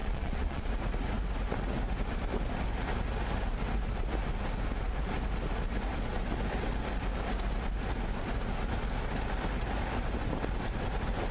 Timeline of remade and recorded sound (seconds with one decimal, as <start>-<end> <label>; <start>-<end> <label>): 0.0-0.7 remade; 0.7-11.3 recorded